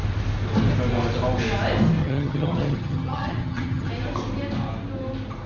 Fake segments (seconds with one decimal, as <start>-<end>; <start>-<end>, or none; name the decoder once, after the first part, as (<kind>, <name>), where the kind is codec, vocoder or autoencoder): 2.0-3.9 (vocoder, HiFi-GAN)